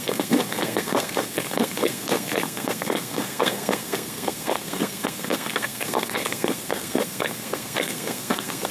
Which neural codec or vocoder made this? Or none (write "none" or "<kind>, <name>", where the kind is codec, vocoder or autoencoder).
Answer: codec, SNAC